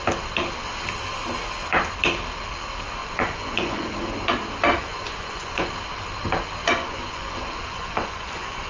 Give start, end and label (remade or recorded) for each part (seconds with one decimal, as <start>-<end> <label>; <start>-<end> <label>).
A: 0.0-3.0 recorded; 3.0-3.9 remade; 3.9-4.8 recorded; 4.8-5.7 remade; 5.7-6.6 recorded; 6.6-8.7 remade